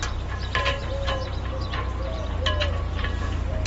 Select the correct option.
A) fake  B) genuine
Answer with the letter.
B